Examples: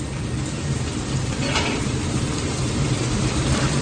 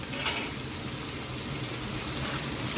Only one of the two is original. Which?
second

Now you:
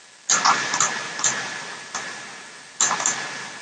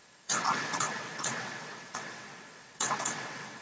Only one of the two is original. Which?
first